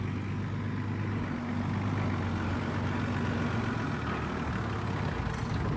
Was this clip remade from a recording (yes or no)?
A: no